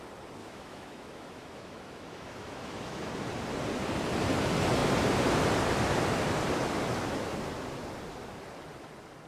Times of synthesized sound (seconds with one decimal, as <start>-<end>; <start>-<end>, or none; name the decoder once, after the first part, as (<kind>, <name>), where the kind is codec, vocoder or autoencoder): 0.4-3.1 (autoencoder, DAC-VAE)